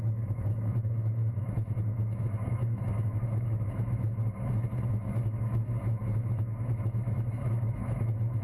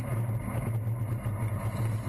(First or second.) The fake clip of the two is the first